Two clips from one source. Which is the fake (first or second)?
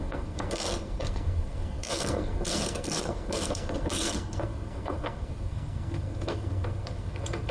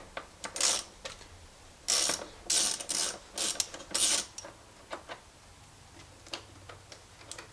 first